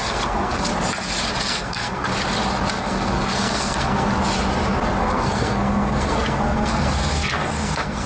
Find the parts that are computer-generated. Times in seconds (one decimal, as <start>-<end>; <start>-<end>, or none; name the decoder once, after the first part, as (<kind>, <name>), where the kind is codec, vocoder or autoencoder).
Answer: 0.0-0.7 (codec, SNAC); 1.4-2.1; 2.7-4.1; 5.0-8.1